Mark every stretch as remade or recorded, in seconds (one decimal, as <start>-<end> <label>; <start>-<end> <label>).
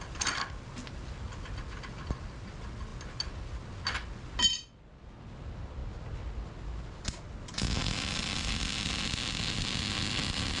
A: 0.0-10.6 recorded